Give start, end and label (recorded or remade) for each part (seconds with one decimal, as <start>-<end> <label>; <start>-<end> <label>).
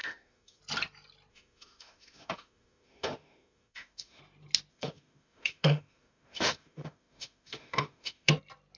0.0-0.6 remade; 0.6-1.3 recorded; 1.3-4.2 remade; 4.2-4.7 recorded; 4.7-8.3 remade; 8.3-8.8 recorded